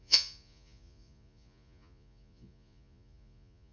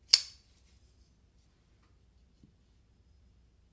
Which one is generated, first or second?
first